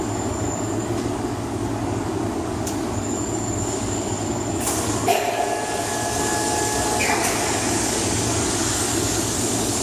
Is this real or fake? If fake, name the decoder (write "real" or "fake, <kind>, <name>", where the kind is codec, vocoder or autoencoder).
fake, codec, DAC